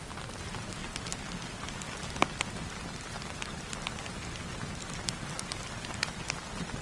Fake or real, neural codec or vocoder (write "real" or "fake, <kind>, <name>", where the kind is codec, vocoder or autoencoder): real